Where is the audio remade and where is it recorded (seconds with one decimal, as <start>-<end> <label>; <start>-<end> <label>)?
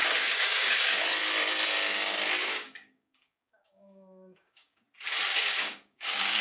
0.0-1.0 remade; 1.0-2.4 recorded; 2.4-4.8 remade; 4.8-5.3 recorded; 5.3-6.4 remade